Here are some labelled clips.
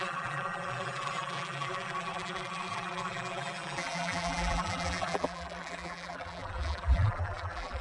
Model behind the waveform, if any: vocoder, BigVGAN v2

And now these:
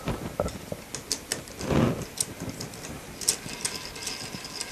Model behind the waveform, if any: none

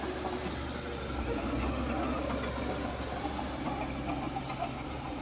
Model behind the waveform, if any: none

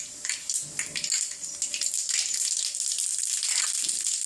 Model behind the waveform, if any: none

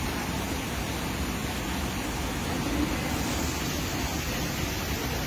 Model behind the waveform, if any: none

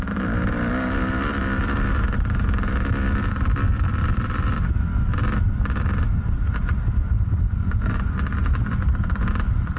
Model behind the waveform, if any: none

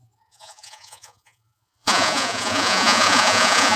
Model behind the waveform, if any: vocoder, Vocos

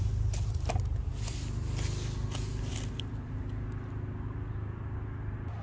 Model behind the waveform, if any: none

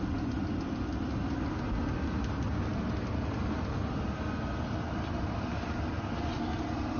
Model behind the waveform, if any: none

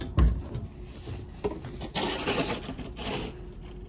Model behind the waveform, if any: none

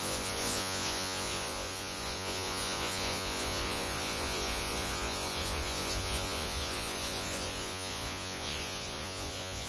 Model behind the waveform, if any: vocoder, Vocos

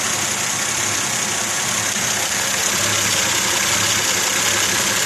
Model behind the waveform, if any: none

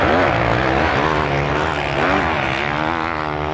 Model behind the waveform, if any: none